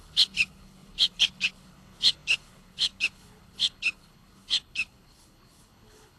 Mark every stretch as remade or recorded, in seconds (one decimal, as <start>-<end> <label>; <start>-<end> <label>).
0.0-6.2 remade